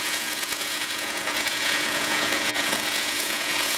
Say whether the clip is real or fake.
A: fake